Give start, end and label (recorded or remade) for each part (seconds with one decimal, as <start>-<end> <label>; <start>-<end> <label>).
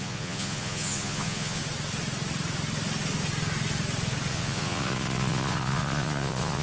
0.0-1.6 remade; 1.6-4.3 recorded; 4.3-6.6 remade